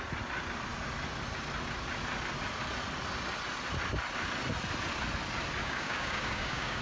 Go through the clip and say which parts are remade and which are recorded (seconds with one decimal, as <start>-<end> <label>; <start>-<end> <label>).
0.0-5.6 recorded; 5.6-6.8 remade